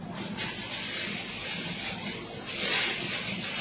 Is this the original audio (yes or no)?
yes